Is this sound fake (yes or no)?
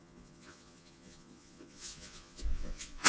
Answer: yes